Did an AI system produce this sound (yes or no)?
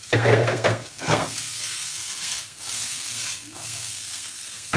yes